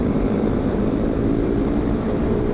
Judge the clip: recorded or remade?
remade